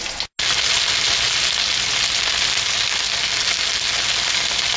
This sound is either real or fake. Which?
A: real